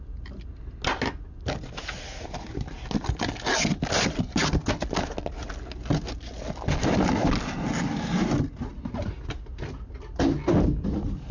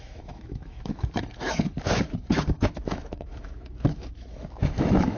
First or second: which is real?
first